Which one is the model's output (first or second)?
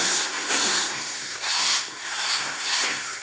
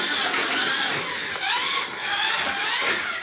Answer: first